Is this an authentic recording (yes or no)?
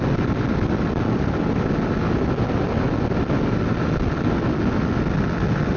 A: yes